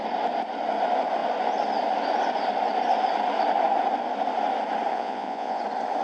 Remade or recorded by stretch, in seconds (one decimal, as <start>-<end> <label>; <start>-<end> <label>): 0.0-4.9 recorded; 4.9-5.6 remade; 5.6-6.0 recorded

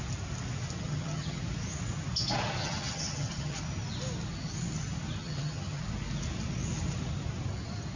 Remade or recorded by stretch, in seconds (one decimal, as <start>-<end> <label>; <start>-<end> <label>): 0.0-0.8 recorded; 0.8-1.4 remade; 1.4-2.6 recorded; 2.6-3.6 remade; 3.6-5.2 recorded; 5.2-5.8 remade; 5.8-8.0 recorded

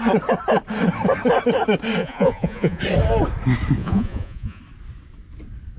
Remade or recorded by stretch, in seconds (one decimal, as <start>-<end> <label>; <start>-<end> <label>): 0.0-2.0 recorded; 2.0-2.8 remade; 2.8-3.8 recorded; 3.8-4.6 remade; 4.6-5.8 recorded